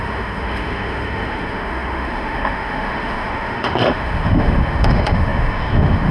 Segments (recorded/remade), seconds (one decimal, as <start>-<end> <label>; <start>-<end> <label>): 0.0-6.1 remade

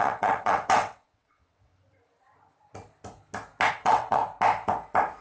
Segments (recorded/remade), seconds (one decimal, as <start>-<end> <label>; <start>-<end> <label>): 0.0-1.7 remade; 1.7-3.7 recorded; 3.7-4.2 remade; 4.2-5.2 recorded

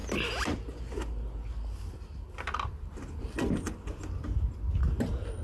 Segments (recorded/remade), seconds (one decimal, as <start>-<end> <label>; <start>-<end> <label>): 0.0-5.4 recorded

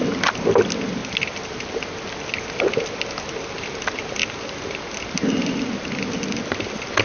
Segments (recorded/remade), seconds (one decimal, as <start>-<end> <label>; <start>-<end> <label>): 0.0-7.0 recorded